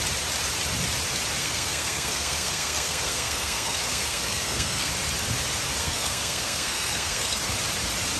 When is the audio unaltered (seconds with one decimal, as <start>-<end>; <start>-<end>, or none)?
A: 0.0-1.4; 4.9-5.8; 7.4-8.2